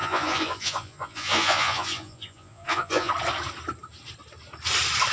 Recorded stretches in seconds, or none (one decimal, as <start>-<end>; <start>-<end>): 3.1-5.1